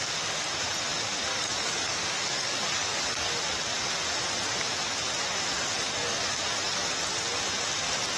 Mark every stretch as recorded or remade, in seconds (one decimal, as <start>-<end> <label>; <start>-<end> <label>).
0.0-1.3 recorded; 1.3-3.4 remade; 3.4-6.0 recorded; 6.0-6.9 remade; 6.9-8.2 recorded